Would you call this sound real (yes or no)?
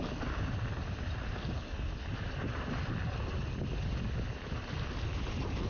yes